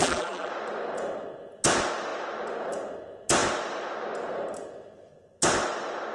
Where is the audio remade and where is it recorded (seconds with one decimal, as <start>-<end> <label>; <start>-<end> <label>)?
0.0-0.5 remade; 0.5-6.1 recorded